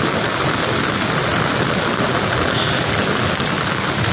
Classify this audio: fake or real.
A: real